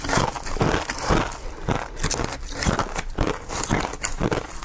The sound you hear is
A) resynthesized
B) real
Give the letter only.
B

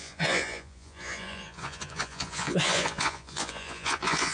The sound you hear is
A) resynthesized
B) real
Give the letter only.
A